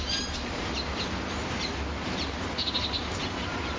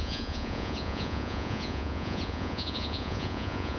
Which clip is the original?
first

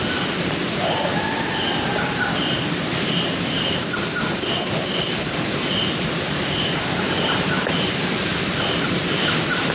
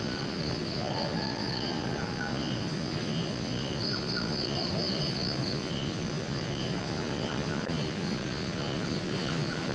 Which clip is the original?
first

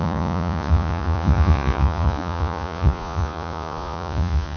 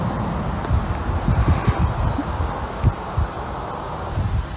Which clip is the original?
second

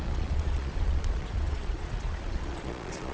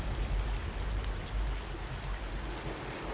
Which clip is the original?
second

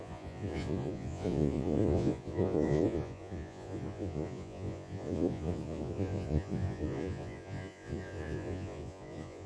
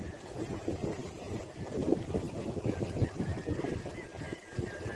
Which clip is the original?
second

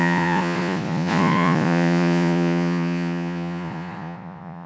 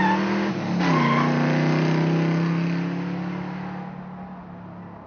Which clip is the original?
second